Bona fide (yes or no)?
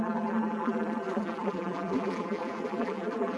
no